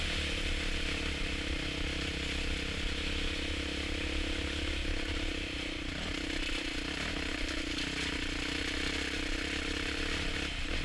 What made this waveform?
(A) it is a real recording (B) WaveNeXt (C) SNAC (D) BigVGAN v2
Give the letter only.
A